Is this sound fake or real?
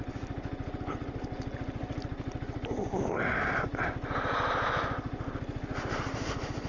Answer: real